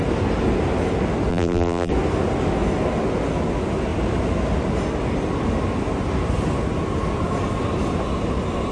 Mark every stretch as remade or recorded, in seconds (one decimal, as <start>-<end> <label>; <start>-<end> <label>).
0.0-1.3 recorded; 1.3-1.9 remade; 1.9-8.7 recorded

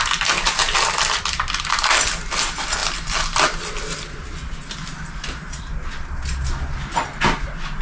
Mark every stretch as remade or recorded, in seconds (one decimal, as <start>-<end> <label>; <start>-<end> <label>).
0.0-7.8 recorded

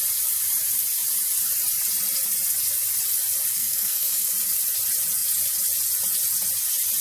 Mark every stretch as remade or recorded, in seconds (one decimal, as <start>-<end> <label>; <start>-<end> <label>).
0.0-3.5 recorded; 3.5-4.3 remade; 4.3-7.0 recorded

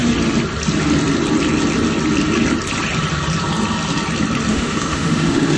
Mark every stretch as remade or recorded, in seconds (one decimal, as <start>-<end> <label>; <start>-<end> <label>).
0.0-4.5 recorded; 4.5-5.6 remade

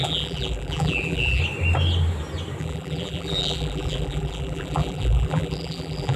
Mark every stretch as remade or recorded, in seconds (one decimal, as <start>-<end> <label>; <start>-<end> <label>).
0.0-1.4 remade; 1.4-2.6 recorded; 2.6-6.2 remade

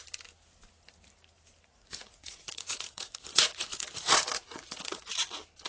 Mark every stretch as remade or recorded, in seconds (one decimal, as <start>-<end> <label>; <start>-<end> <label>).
0.0-1.7 recorded; 1.7-5.1 remade; 5.1-5.7 recorded

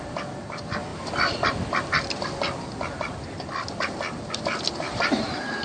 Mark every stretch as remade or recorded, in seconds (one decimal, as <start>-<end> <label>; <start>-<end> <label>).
0.0-5.6 remade